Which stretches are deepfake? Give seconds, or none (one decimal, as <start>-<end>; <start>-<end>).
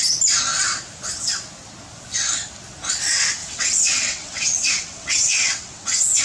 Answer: 3.4-6.2